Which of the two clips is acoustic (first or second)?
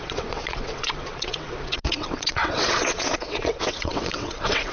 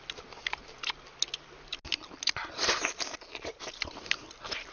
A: second